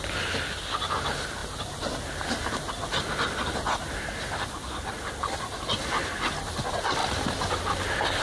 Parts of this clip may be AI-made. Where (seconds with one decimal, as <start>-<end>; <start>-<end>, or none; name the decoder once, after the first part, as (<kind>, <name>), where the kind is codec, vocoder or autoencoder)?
7.0-7.6 (vocoder, BigVGAN v2)